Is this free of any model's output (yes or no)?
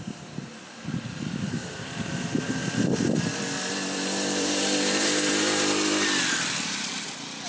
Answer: no